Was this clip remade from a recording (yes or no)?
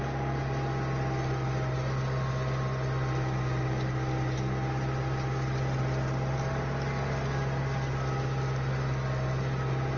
no